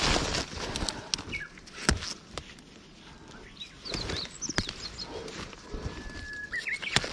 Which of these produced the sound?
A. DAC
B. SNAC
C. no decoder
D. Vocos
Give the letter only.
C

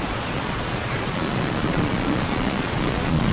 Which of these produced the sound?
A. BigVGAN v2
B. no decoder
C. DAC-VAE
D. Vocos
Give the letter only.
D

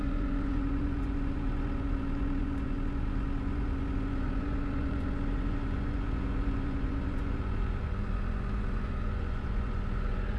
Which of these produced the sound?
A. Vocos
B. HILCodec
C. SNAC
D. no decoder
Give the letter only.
A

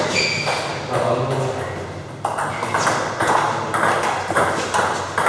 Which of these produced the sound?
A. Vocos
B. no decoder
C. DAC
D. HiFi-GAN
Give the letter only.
B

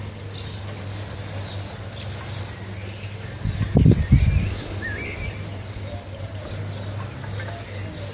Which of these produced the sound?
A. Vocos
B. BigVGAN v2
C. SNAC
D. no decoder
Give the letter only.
D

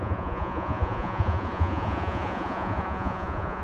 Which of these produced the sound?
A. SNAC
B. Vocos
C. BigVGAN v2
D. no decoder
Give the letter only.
B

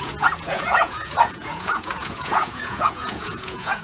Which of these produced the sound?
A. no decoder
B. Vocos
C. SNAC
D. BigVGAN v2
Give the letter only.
B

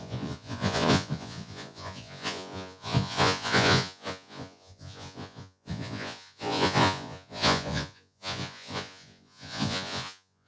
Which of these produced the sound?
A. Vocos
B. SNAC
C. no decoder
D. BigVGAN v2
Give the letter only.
A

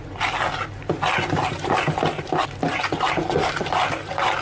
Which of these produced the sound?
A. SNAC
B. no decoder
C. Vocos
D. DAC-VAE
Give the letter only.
B